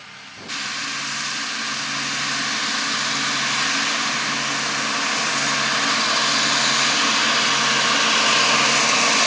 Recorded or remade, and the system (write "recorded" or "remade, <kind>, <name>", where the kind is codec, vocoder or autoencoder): recorded